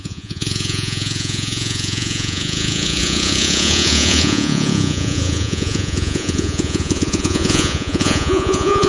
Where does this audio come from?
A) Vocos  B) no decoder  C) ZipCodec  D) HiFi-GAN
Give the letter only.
A